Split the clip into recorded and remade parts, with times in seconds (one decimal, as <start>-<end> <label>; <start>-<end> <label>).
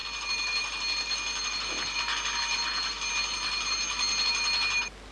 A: 0.0-5.1 recorded